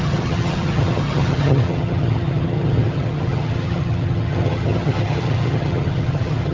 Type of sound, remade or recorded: remade